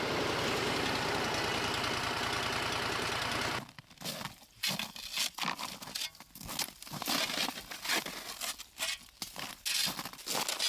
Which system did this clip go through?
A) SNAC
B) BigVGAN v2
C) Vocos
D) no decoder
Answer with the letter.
D